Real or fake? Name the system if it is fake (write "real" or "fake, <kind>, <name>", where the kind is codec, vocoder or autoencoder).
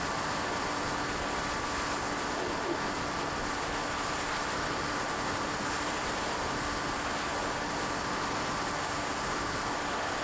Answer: real